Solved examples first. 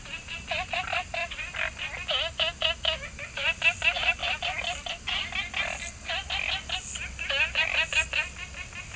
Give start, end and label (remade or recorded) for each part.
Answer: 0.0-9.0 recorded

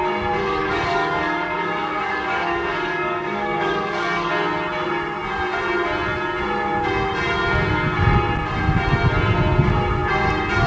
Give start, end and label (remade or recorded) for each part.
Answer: 0.0-0.4 recorded; 0.4-4.3 remade; 4.3-10.7 recorded

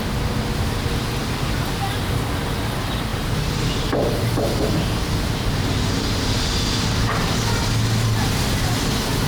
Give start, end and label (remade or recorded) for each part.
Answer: 0.0-9.3 recorded